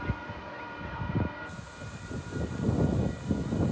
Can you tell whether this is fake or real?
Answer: real